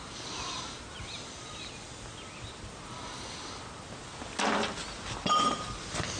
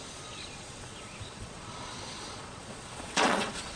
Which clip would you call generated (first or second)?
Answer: second